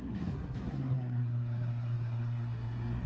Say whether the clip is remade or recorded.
remade